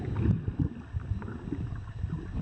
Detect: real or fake real